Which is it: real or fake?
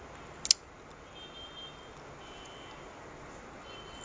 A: real